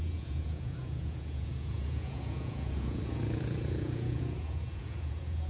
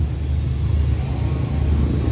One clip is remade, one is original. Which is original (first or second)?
second